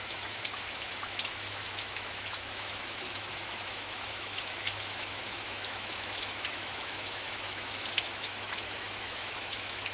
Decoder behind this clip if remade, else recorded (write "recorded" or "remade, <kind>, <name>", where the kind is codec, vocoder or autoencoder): remade, autoencoder, DAC-VAE